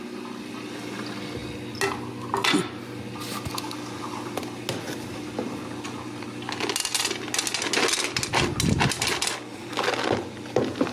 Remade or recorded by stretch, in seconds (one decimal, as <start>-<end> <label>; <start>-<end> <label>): 0.0-10.9 recorded